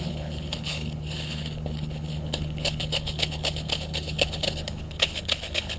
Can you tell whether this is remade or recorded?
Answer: remade